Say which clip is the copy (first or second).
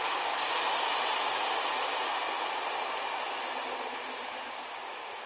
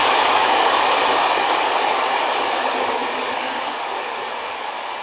second